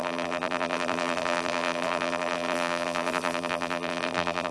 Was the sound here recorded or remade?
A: remade